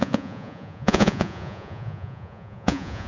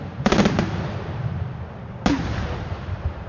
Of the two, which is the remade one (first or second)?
first